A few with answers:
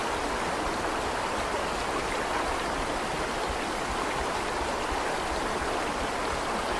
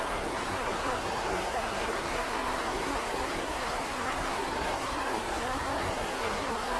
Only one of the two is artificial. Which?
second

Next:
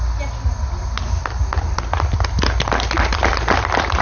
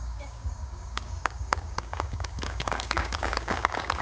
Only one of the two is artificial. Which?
second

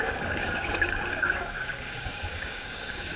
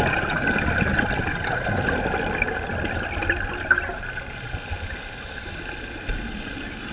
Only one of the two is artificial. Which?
first